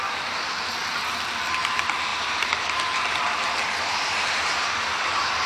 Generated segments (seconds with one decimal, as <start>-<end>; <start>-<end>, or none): 2.1-5.5